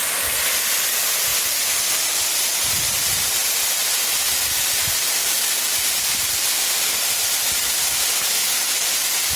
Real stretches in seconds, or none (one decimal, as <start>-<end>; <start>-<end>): 0.0-9.4

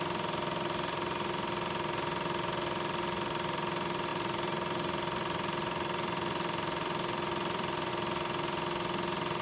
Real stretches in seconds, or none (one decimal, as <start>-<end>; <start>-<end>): 0.0-4.1; 7.9-9.4

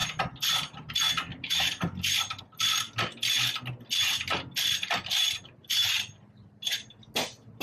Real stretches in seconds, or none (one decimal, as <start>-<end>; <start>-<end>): 0.0-1.3; 2.4-5.2; 6.9-7.6

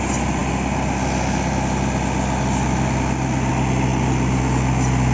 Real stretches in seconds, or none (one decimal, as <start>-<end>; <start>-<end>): 0.0-5.1

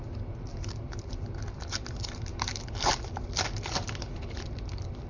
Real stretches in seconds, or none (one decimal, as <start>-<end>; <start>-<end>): 0.0-0.5; 1.4-2.3; 3.1-5.1